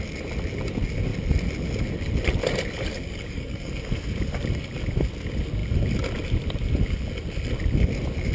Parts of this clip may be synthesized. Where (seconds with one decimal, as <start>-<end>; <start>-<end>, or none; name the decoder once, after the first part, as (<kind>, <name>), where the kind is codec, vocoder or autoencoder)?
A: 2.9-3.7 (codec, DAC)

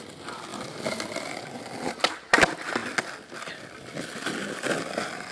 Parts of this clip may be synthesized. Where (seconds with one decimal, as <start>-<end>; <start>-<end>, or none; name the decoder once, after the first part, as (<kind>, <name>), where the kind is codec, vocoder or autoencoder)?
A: none

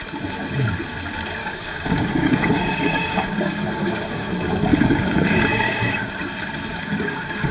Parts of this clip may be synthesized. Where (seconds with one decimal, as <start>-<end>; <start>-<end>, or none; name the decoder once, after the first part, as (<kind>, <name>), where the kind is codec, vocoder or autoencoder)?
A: 1.4-4.3 (codec, DAC); 4.7-6.1; 6.7-7.5